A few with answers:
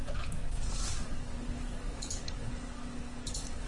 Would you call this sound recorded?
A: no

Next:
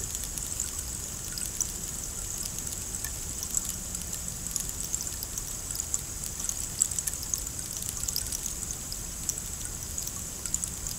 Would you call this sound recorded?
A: yes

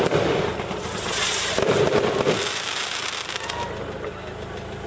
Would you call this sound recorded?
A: yes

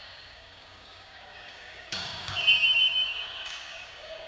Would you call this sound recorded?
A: no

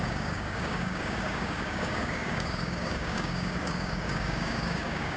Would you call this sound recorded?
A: no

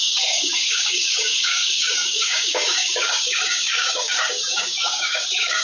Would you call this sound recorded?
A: no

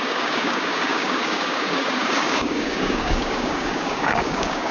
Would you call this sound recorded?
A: no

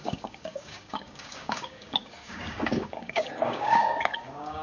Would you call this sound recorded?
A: no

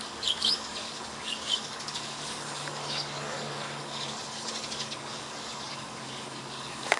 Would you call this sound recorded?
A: no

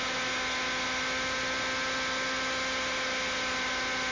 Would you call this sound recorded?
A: yes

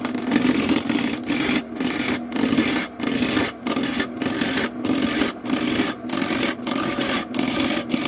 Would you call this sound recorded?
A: yes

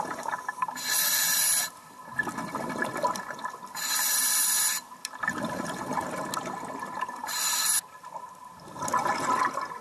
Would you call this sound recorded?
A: yes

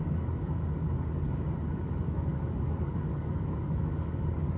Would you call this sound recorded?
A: no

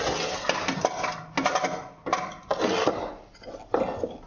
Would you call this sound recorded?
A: yes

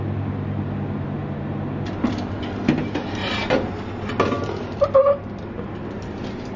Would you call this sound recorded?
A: yes